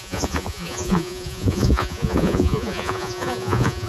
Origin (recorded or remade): remade